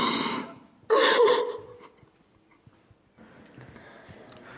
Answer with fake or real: real